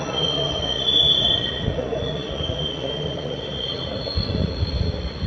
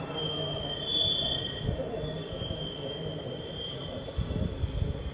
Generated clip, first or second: first